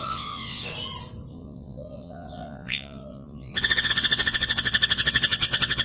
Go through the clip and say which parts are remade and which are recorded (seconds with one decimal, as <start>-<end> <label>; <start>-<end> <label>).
0.0-0.7 remade; 0.7-1.3 recorded; 1.3-5.8 remade